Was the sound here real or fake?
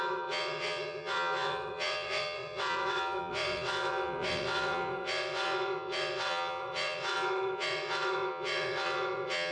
fake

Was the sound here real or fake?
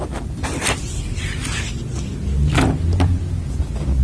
real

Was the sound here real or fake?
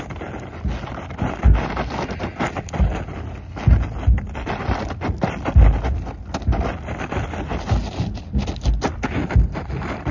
real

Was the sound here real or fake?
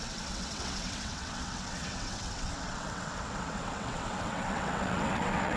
fake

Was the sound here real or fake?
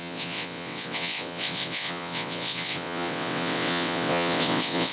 fake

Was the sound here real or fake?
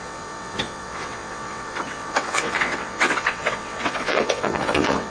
fake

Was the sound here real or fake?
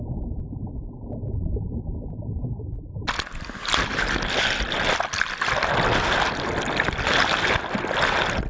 real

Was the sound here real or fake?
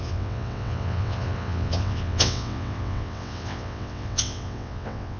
fake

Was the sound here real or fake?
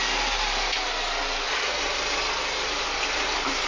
real